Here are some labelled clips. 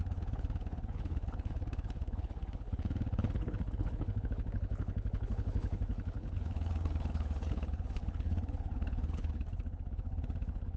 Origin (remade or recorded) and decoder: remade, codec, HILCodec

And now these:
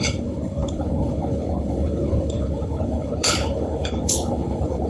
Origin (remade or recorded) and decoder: remade, codec, HILCodec